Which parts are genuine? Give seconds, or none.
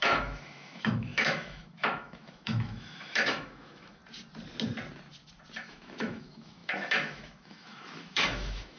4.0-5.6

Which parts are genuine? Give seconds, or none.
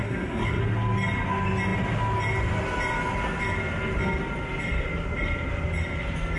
0.6-6.4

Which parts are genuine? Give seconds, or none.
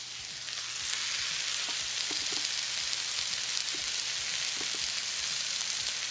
0.0-6.1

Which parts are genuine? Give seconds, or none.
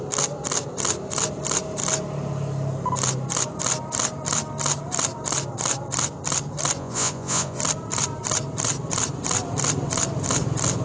0.0-6.8; 7.6-10.8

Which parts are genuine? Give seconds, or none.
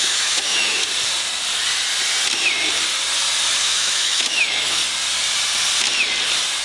0.8-3.6; 4.8-6.6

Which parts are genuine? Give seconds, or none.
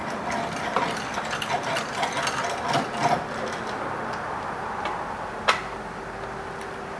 2.2-7.0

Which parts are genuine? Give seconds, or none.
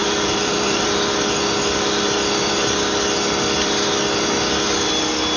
0.9-5.4